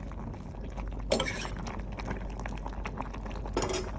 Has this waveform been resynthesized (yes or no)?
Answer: no